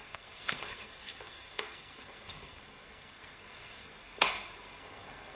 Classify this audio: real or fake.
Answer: fake